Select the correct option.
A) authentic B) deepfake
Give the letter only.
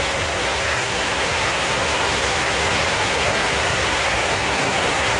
B